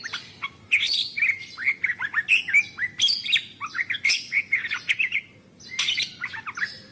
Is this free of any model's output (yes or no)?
yes